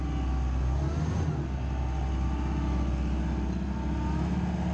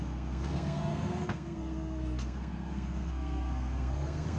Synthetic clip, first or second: second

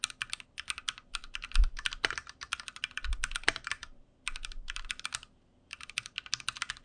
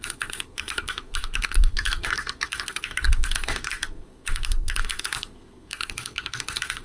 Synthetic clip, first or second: second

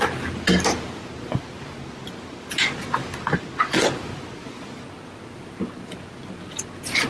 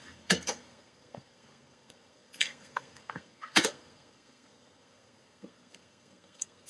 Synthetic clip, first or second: second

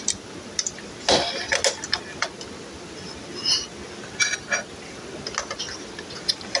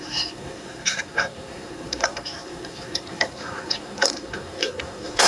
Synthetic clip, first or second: second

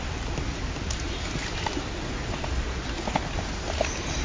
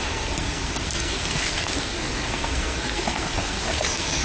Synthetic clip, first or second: second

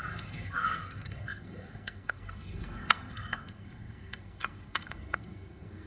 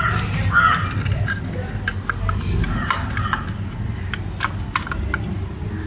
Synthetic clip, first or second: first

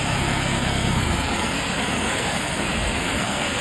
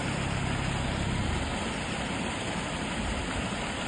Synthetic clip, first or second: first